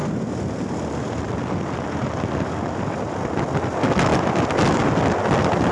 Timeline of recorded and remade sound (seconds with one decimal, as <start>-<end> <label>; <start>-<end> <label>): 0.0-3.4 remade; 3.4-5.7 recorded